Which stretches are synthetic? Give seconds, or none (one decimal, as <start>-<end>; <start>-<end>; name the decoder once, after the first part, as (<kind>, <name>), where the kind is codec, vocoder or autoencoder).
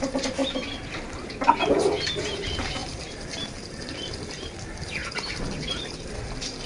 0.0-0.4 (vocoder, BigVGAN v2); 1.6-6.7